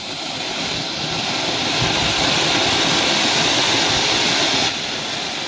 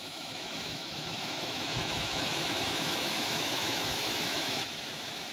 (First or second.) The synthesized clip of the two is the second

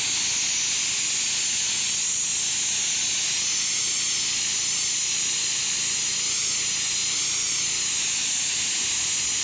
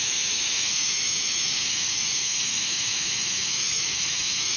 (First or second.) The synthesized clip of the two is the second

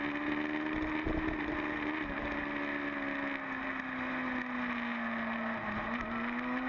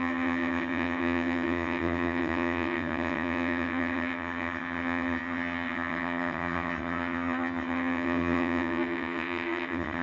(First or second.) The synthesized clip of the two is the second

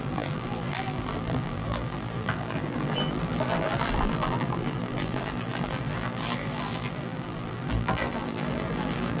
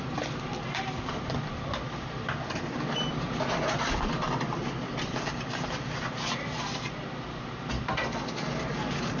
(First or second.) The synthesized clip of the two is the first